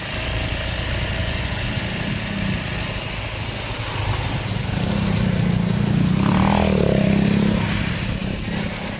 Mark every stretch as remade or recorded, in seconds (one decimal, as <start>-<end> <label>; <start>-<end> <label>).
0.0-1.2 recorded; 1.2-1.8 remade; 1.8-9.0 recorded